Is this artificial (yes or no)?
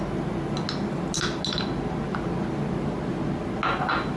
no